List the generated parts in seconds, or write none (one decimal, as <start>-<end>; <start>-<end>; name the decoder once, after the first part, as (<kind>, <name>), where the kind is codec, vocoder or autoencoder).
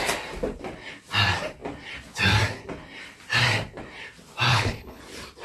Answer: 4.5-5.0 (codec, HILCodec)